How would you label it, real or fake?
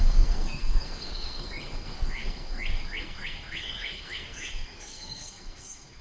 fake